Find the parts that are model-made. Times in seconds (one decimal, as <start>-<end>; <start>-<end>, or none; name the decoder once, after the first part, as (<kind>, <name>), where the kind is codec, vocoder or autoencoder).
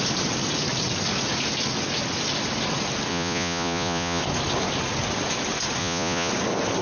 3.1-4.2 (vocoder, Vocos); 5.8-6.3